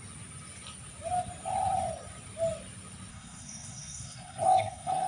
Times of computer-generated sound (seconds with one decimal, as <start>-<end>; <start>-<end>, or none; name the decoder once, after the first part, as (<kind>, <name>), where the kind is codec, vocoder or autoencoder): 3.1-5.1 (codec, SNAC)